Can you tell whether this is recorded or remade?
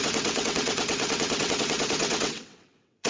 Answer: remade